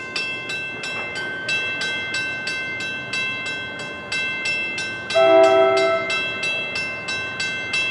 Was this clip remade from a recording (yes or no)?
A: no